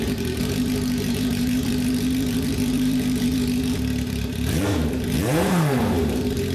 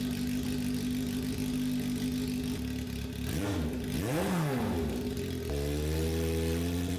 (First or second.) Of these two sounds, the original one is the second